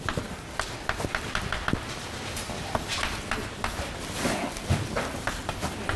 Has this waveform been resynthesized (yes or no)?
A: yes